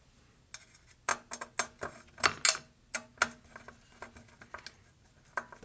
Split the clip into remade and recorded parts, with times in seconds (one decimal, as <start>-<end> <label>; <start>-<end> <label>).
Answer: 0.0-5.6 recorded